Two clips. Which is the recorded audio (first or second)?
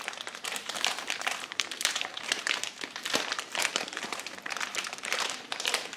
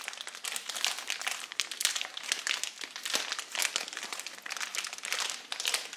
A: second